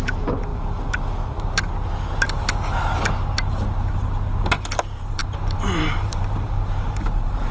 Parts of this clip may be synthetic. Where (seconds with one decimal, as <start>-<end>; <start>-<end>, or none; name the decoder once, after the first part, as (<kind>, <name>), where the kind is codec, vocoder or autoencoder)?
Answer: 0.0-0.5 (vocoder, BigVGAN v2); 4.8-7.5